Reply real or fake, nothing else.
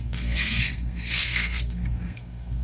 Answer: fake